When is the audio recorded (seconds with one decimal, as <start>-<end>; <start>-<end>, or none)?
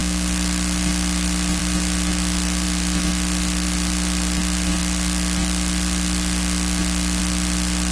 0.0-7.9